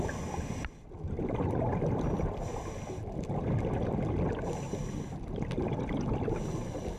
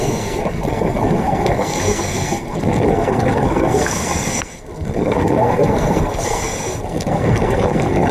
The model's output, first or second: second